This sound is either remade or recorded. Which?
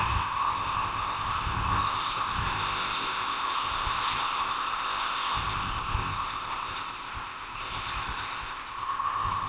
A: remade